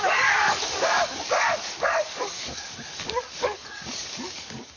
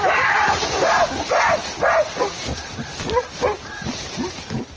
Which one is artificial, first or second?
first